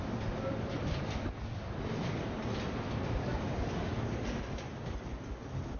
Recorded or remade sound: recorded